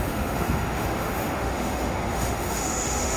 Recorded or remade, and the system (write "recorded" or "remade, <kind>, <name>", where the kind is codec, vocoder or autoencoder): remade, autoencoder, DAC-VAE